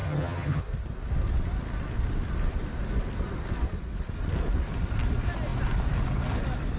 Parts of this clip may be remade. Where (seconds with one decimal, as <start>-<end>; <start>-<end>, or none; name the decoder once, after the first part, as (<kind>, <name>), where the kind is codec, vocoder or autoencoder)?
0.0-0.6 (vocoder, HiFi-GAN)